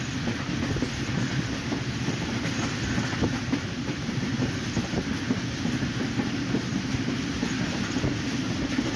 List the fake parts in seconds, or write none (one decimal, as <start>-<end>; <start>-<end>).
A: 2.0-5.1; 6.7-7.3